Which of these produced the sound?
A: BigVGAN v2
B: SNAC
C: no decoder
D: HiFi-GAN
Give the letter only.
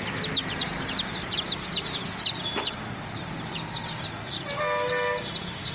C